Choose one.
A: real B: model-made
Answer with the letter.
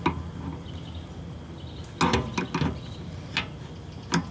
A